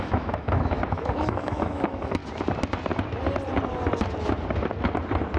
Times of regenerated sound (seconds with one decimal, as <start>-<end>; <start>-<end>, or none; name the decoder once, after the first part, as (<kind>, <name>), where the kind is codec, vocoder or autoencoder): 0.0-2.2 (autoencoder, DAC-VAE)

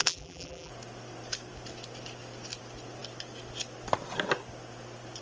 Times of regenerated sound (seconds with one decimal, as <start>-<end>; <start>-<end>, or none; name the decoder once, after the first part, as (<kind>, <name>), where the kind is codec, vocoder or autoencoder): 0.0-0.7 (vocoder, BigVGAN v2)